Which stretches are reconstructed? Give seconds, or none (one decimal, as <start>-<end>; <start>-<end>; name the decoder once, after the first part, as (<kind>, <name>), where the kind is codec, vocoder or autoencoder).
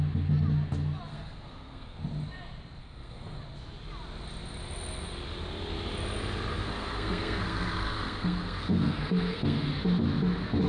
1.1-2.0 (codec, SNAC); 2.8-3.4; 6.5-9.7